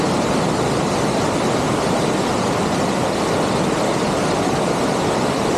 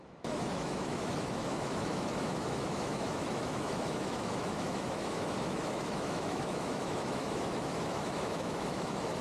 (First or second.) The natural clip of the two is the first